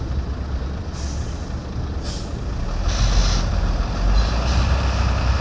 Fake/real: real